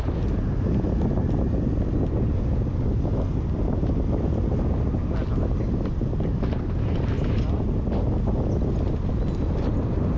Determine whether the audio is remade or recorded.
recorded